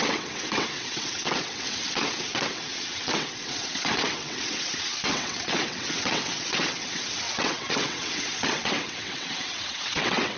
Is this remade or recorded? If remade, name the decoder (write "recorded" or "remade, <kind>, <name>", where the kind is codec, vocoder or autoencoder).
remade, vocoder, WaveNeXt